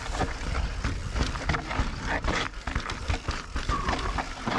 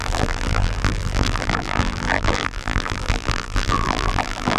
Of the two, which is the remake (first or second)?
second